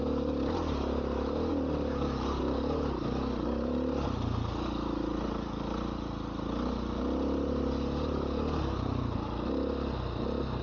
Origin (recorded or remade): recorded